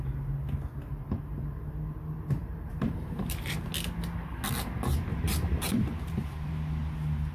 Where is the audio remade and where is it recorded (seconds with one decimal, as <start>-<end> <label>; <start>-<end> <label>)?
0.0-2.4 recorded; 2.4-3.7 remade; 3.7-5.1 recorded; 5.1-6.5 remade; 6.5-7.3 recorded